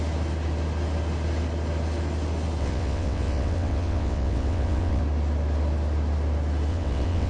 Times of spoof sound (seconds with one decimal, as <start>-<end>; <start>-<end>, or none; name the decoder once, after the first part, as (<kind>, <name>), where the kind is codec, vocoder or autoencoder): 2.6-5.0 (vocoder, WaveNeXt); 6.7-7.3

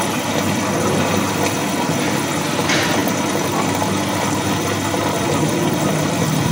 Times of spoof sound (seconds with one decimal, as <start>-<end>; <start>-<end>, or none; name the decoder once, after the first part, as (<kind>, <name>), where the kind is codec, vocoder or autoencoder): none

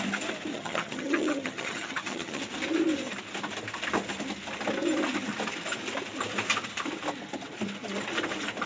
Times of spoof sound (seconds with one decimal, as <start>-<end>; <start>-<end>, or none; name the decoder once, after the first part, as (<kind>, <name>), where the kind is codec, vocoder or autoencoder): 0.5-2.4 (vocoder, HiFi-GAN)

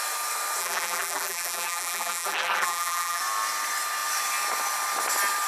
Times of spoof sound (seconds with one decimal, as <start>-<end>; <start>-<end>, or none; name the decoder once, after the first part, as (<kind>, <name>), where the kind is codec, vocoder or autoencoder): 0.6-3.2 (vocoder, BigVGAN v2)

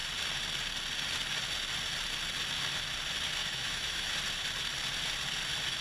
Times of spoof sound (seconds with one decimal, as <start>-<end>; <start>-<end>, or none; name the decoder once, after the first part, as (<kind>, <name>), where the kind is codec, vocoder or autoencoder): 3.4-4.1 (autoencoder, DAC-VAE)

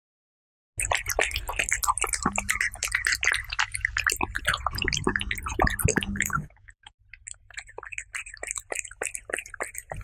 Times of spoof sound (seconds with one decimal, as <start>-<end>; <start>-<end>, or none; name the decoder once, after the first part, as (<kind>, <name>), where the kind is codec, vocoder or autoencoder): 5.9-7.0 (codec, DAC)

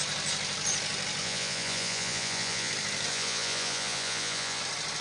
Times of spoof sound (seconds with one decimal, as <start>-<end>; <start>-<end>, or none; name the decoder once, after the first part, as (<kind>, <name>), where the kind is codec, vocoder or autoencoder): 1.2-2.7 (vocoder, Vocos); 3.1-4.6

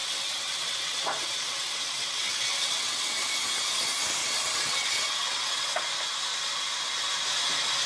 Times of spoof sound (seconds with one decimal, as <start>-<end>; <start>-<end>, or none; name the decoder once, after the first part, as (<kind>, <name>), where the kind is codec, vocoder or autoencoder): 0.0-3.3 (vocoder, WaveNeXt); 4.2-5.8